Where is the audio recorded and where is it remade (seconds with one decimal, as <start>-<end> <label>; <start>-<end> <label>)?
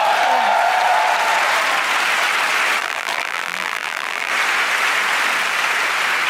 0.0-2.8 recorded; 2.8-4.3 remade; 4.3-6.3 recorded